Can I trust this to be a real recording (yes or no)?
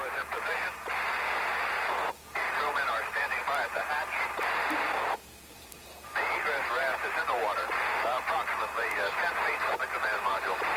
no